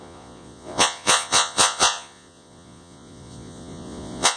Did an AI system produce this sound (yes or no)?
yes